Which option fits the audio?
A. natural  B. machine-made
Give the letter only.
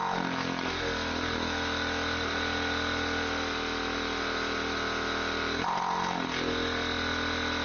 A